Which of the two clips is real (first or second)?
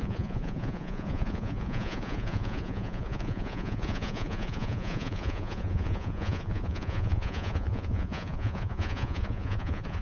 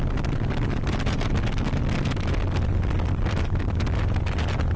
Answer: second